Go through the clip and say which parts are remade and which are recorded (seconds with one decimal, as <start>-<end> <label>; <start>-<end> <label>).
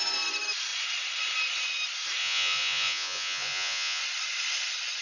0.0-2.2 recorded; 2.2-4.0 remade; 4.0-5.0 recorded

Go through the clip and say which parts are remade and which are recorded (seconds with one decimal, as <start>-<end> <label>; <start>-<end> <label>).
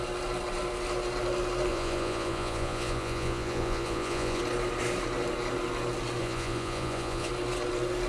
0.0-1.7 recorded; 1.7-4.4 remade; 4.4-6.2 recorded; 6.2-7.3 remade; 7.3-8.1 recorded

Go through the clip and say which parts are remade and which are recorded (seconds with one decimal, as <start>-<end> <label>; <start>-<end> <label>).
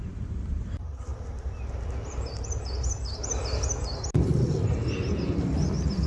0.0-6.1 recorded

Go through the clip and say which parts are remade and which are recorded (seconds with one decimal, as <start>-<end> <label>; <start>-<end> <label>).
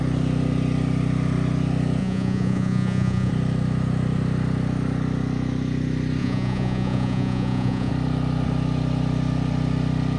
0.0-2.0 recorded; 2.0-3.3 remade; 3.3-6.2 recorded; 6.2-7.9 remade; 7.9-10.2 recorded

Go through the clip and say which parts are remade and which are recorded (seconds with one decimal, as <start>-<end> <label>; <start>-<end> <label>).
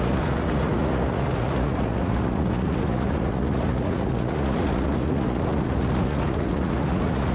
0.0-7.3 remade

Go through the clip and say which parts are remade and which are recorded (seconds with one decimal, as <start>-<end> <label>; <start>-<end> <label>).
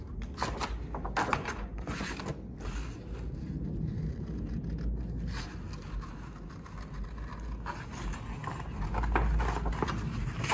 0.0-1.3 recorded; 1.3-2.1 remade; 2.1-10.5 recorded